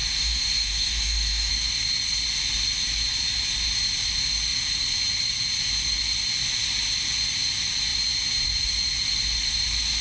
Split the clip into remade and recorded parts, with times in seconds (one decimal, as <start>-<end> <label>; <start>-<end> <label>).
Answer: 0.0-1.5 remade; 1.5-10.0 recorded